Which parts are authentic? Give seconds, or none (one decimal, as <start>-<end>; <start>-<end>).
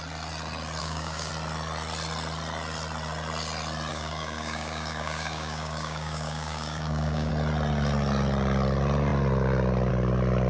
0.0-0.8; 1.3-3.9; 7.3-10.5